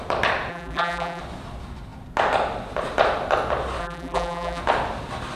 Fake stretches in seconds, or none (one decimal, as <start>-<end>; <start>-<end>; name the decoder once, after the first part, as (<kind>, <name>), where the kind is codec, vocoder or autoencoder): 0.5-1.2 (vocoder, BigVGAN v2); 3.8-4.6